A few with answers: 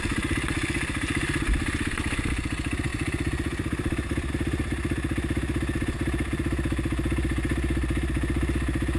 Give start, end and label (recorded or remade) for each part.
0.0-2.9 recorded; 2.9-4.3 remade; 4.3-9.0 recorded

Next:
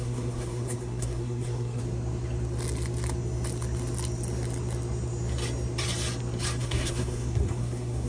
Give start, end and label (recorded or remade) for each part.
0.0-1.8 remade; 1.8-6.6 recorded; 6.6-8.1 remade

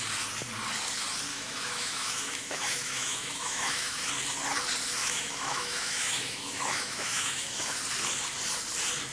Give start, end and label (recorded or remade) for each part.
0.0-1.3 recorded; 1.3-4.1 remade; 4.1-5.0 recorded; 5.0-7.8 remade; 7.8-9.1 recorded

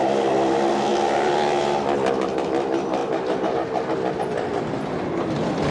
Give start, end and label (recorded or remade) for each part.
0.0-5.7 recorded

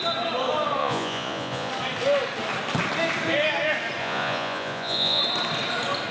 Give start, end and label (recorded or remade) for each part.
0.0-0.8 recorded; 0.8-1.7 remade; 1.7-4.0 recorded; 4.0-5.2 remade; 5.2-6.1 recorded